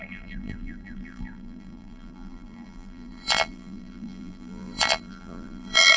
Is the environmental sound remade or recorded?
remade